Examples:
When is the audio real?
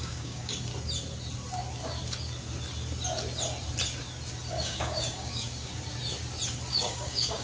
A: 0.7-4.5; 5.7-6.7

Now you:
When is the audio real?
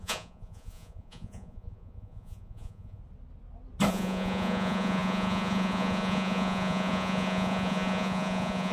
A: 3.0-3.9